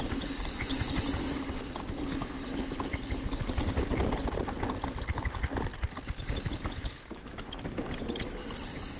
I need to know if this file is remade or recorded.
recorded